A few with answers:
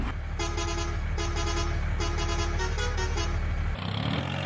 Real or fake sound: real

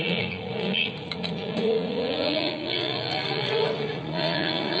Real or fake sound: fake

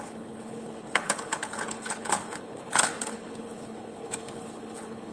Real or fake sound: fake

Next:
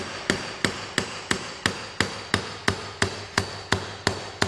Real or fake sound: real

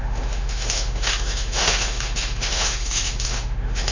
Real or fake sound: fake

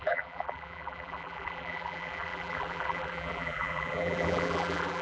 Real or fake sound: fake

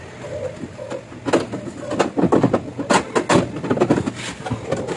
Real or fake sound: real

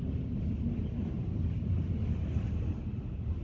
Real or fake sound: real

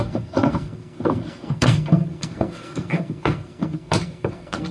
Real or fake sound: fake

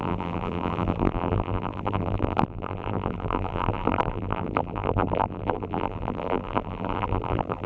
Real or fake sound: fake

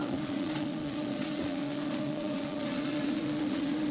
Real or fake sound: fake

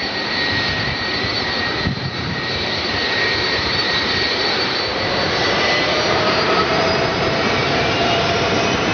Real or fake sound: fake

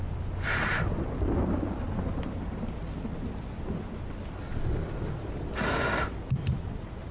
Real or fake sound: real